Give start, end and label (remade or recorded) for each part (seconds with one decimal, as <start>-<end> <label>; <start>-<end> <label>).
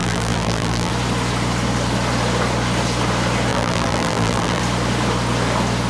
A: 0.0-0.9 remade; 0.9-3.5 recorded; 3.5-4.6 remade; 4.6-5.9 recorded